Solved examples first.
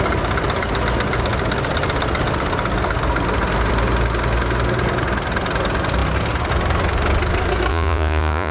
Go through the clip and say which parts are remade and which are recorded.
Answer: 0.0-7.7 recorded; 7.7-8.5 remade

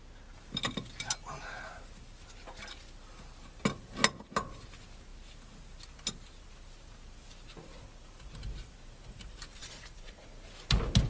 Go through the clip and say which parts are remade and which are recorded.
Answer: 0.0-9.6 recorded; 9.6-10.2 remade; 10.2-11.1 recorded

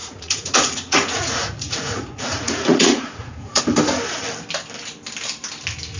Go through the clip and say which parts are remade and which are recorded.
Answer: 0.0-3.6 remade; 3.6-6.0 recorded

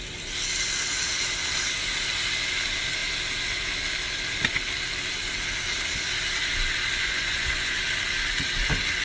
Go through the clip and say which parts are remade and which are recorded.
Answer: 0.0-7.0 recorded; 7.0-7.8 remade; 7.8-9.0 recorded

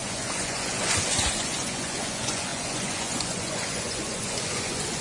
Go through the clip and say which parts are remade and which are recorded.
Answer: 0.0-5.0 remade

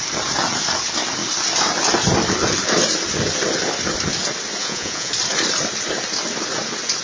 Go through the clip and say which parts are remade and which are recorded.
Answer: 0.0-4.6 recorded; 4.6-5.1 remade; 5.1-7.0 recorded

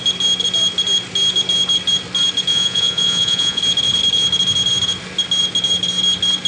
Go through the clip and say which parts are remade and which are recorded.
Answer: 0.0-2.5 recorded; 2.5-3.6 remade; 3.6-6.5 recorded